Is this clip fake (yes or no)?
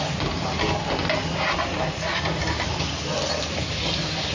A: no